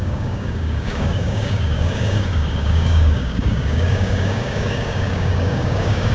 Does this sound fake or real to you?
fake